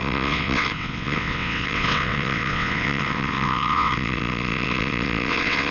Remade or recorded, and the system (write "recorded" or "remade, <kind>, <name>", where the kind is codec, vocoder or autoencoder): remade, vocoder, WaveNeXt